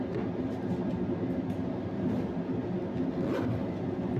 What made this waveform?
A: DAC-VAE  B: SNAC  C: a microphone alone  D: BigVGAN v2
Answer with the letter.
C